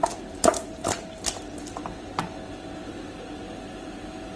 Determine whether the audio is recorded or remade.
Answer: recorded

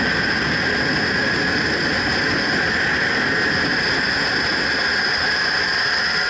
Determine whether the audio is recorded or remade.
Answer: recorded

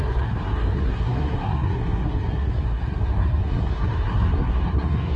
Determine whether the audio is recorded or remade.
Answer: remade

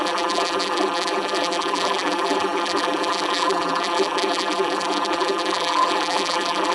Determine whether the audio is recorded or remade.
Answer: remade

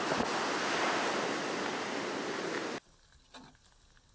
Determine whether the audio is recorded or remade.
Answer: recorded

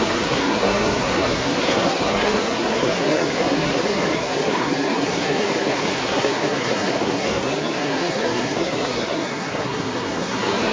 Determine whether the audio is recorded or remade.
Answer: remade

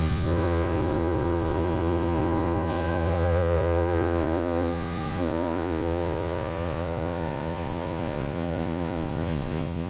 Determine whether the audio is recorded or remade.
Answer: remade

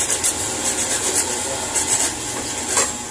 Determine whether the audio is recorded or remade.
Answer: recorded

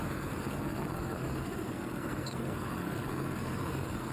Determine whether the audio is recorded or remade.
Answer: remade